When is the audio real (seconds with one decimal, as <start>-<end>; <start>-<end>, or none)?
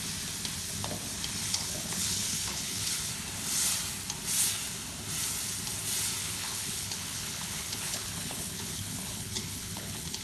0.0-1.4; 3.1-6.2